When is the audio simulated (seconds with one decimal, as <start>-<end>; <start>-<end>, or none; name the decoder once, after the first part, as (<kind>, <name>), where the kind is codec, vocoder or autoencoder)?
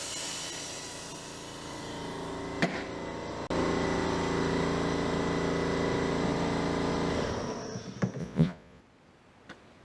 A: 8.2-8.8 (vocoder, Vocos)